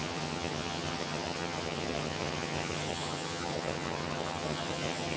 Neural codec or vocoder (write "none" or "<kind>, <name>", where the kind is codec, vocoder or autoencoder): vocoder, HiFi-GAN